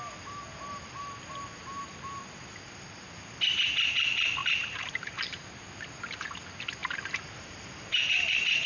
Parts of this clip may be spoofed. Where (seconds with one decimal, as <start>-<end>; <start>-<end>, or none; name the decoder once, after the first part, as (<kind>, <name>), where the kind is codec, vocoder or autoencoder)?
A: 4.4-5.3 (vocoder, BigVGAN v2); 6.8-8.7